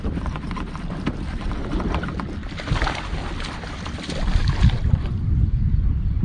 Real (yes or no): no